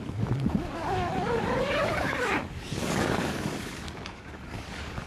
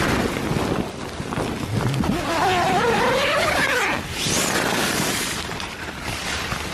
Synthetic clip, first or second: first